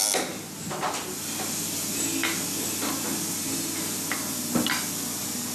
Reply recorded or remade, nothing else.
recorded